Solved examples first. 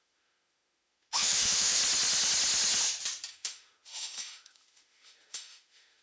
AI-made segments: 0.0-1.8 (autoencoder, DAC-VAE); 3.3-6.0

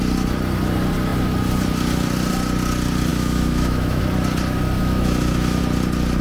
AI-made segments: 3.1-4.0 (autoencoder, DAC-VAE); 4.8-5.6

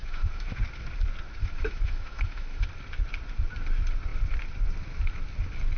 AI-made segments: 0.0-0.6 (autoencoder, DAC-VAE); 1.4-2.7

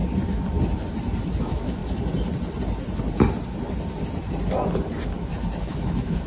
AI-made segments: 1.4-1.8 (autoencoder, DAC-VAE); 5.6-6.3

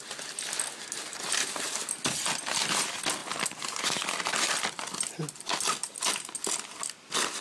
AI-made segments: none

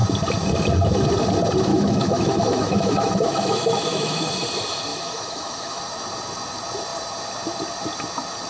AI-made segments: 1.7-4.3 (autoencoder, DAC-VAE); 4.9-5.8

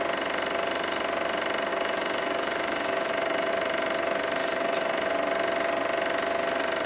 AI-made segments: 1.7-3.5 (autoencoder, DAC-VAE); 4.4-5.1

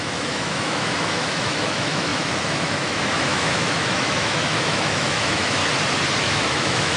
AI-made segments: 0.0-5.6 (autoencoder, DAC-VAE); 6.2-7.0